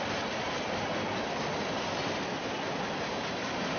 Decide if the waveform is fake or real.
real